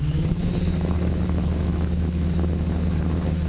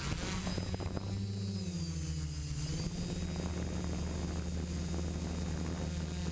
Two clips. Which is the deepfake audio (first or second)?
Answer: first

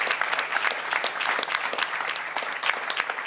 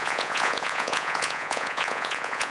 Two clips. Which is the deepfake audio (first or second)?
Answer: second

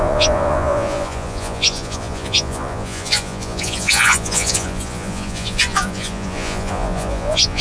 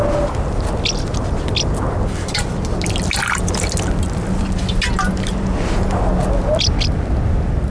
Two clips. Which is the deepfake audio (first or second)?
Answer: first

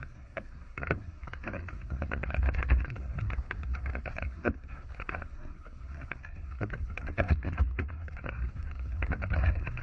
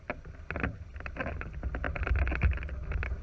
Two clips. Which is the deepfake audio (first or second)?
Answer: first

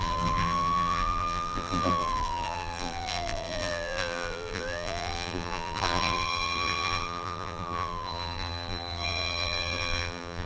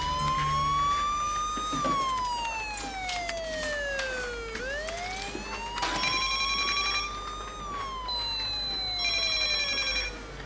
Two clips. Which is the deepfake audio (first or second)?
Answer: first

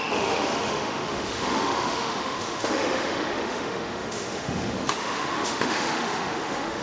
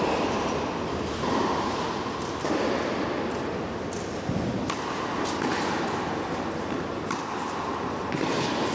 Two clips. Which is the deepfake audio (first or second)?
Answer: first